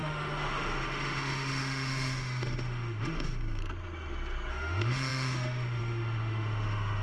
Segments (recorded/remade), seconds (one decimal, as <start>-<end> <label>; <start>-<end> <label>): 0.0-3.6 remade; 3.6-4.5 recorded; 4.5-7.0 remade